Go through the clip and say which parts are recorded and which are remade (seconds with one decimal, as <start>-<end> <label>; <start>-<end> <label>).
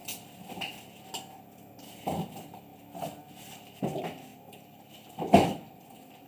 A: 0.0-6.3 recorded